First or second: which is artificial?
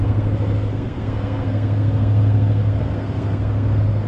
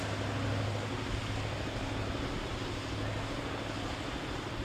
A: first